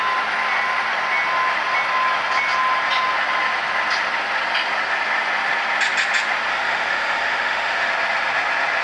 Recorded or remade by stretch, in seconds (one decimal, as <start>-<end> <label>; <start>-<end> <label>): 0.0-6.5 recorded; 6.5-7.9 remade; 7.9-8.8 recorded